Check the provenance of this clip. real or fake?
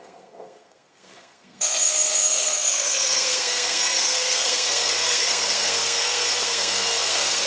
fake